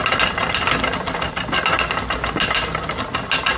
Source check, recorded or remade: recorded